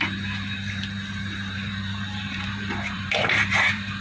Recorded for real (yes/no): no